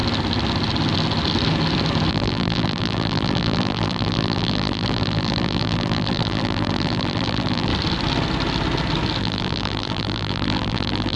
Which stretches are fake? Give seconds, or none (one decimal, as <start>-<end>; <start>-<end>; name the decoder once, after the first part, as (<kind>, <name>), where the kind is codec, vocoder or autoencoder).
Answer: 2.1-7.7 (vocoder, BigVGAN v2); 9.2-11.2